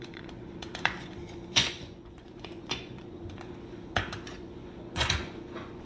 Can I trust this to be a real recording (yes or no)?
no